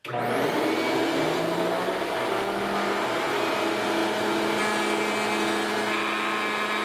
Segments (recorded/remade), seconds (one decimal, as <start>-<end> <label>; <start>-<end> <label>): 0.0-6.8 recorded